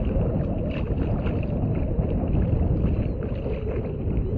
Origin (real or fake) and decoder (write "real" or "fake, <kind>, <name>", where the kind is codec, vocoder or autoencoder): real